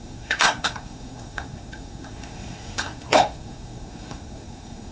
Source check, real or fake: fake